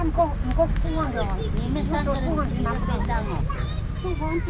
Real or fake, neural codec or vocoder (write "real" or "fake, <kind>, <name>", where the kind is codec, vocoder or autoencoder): real